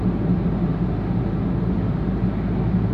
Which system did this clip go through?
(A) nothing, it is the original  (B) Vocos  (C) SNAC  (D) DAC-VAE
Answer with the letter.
A